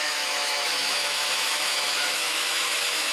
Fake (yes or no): yes